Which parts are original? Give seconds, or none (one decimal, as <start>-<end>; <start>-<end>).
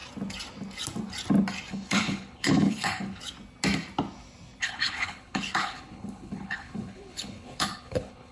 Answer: 0.0-1.7; 3.2-4.6